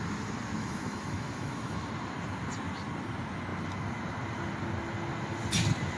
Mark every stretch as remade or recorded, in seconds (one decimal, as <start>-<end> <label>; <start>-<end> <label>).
0.0-0.6 recorded; 0.6-1.9 remade; 1.9-6.0 recorded